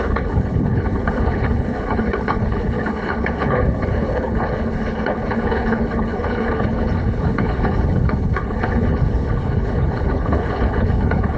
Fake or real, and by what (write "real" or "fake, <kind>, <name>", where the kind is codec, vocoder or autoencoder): fake, codec, HILCodec